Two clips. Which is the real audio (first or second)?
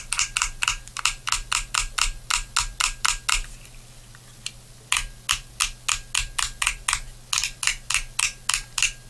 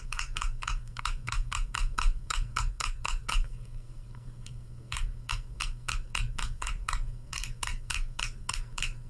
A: first